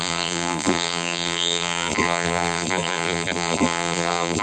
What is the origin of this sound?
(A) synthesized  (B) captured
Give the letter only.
A